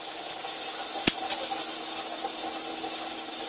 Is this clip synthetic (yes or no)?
no